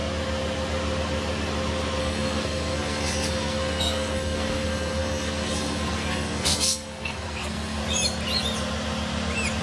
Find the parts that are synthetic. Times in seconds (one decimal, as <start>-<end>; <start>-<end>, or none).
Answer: 2.0-7.8